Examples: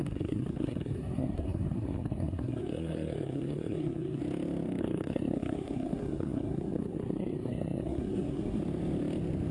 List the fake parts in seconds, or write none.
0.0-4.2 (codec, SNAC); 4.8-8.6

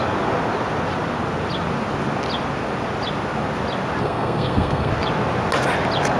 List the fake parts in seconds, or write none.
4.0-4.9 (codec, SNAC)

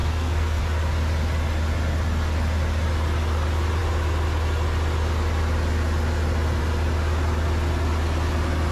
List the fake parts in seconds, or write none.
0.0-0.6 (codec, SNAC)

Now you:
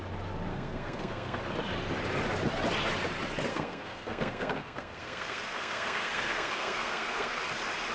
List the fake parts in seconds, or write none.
0.5-1.4 (codec, SNAC); 3.5-7.4

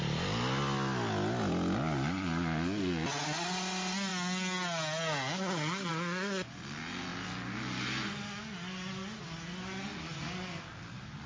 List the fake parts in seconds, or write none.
none

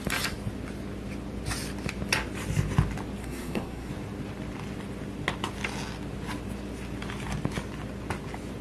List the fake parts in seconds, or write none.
3.2-3.9 (codec, SNAC)